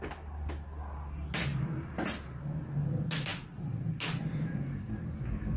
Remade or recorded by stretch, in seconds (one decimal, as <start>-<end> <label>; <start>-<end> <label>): 0.0-1.5 recorded; 1.5-2.2 remade; 2.2-5.6 recorded